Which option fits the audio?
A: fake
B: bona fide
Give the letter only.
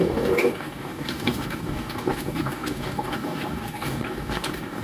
A